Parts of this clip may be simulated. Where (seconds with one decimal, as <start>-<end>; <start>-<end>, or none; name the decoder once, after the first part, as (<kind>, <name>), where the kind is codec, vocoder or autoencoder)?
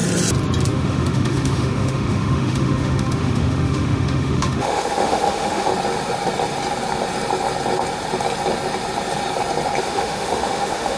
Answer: 0.7-5.7 (autoencoder, DAC-VAE); 9.8-11.0